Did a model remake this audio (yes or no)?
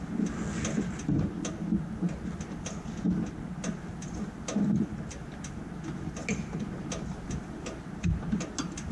no